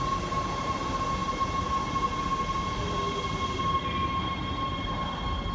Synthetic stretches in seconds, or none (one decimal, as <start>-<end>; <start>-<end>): none